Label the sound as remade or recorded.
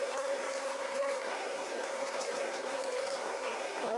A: remade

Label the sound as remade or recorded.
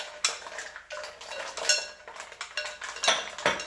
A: recorded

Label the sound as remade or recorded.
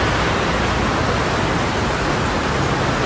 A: recorded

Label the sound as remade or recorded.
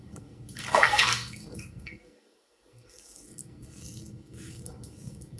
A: remade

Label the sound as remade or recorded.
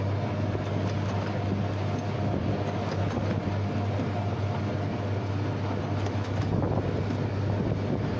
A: recorded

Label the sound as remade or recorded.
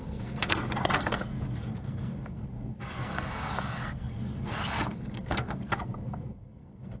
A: remade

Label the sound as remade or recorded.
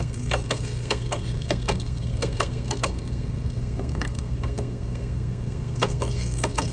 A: remade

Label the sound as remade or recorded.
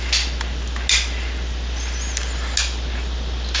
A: recorded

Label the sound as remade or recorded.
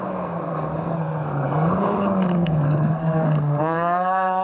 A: remade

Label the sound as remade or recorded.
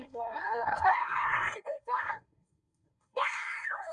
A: remade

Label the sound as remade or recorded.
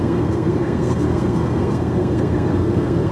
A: remade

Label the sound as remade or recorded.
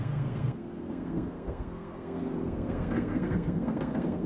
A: remade